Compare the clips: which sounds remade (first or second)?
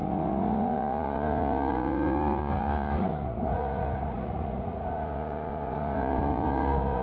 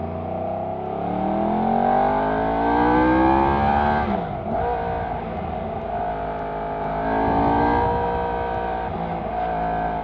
first